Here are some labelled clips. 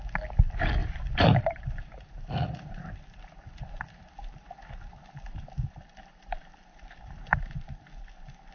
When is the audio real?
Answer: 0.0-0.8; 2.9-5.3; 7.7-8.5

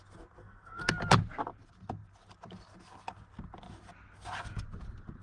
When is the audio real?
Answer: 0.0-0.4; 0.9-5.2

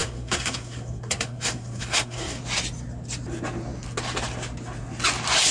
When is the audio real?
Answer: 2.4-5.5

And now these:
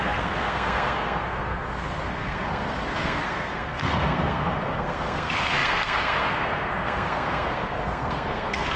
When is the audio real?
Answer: none

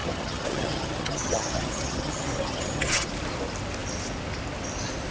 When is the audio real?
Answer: 3.1-5.1

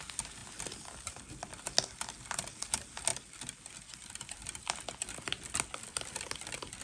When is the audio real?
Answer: 0.0-6.8

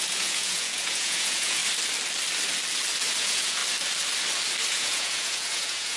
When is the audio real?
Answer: 1.6-3.2; 3.6-4.7